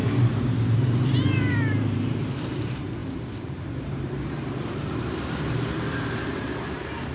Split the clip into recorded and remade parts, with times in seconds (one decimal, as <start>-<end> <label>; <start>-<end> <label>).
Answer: 0.0-7.1 remade